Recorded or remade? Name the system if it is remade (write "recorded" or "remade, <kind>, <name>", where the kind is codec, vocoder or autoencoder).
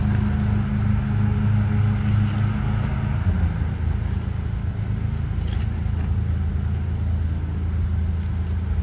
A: recorded